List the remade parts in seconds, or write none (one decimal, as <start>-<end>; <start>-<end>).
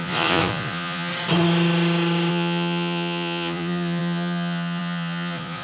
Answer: 0.0-1.1; 2.3-5.6